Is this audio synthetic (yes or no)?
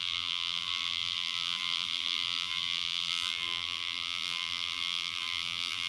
yes